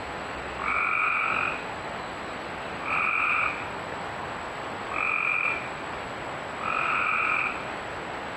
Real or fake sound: real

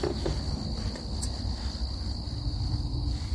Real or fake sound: real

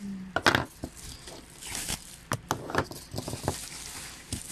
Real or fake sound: real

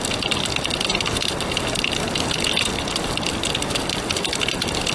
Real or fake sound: fake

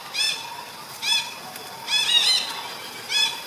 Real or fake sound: real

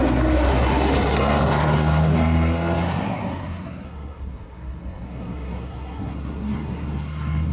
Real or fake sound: fake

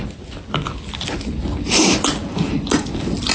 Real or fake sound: real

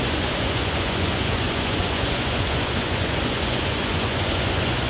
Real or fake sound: fake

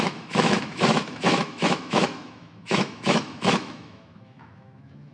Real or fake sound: fake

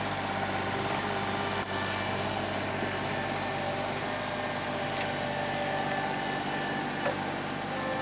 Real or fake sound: real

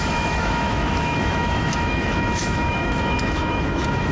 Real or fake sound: fake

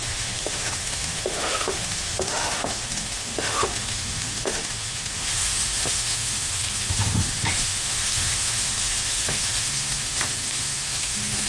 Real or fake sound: fake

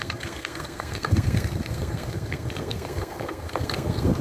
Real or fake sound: fake